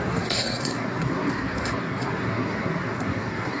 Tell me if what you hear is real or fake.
fake